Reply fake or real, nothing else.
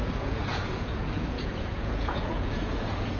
fake